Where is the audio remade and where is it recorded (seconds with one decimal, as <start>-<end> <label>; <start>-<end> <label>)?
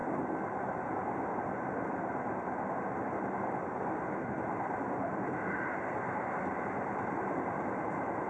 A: 0.0-8.3 recorded